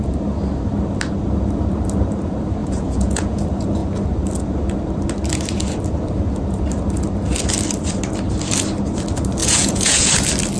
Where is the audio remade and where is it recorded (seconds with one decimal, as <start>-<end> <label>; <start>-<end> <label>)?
0.0-2.6 recorded; 2.6-3.4 remade; 3.4-9.4 recorded; 9.4-10.1 remade; 10.1-10.6 recorded